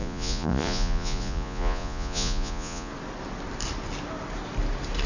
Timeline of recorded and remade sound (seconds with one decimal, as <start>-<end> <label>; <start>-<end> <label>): 0.0-2.9 remade; 2.9-5.1 recorded